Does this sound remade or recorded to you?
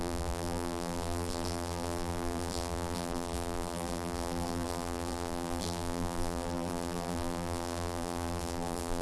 remade